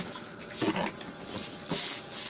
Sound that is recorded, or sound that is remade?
remade